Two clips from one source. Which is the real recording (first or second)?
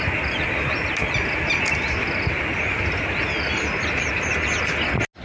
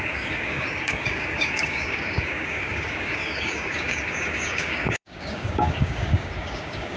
first